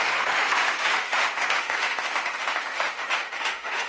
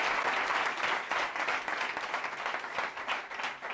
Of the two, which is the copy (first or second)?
first